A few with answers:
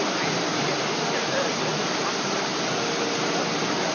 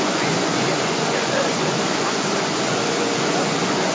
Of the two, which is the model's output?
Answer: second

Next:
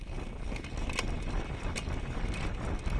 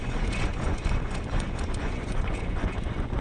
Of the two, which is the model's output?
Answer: second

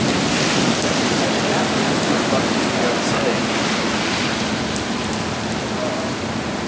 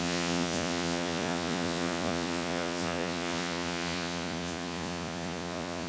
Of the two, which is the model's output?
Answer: second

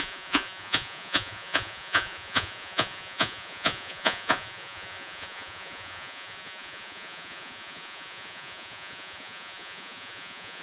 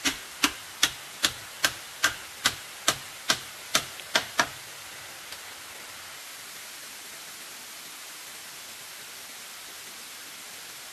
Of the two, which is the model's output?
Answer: first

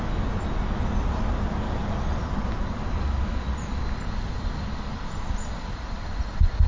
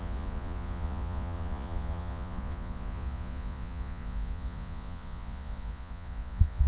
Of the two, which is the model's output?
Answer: second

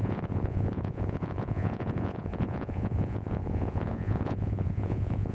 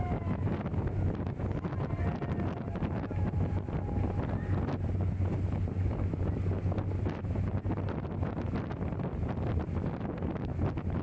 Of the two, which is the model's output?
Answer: first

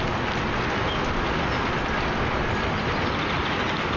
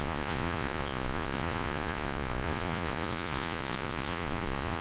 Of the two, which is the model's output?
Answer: second